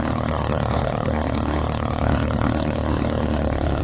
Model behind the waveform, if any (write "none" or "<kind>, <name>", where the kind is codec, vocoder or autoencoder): codec, SNAC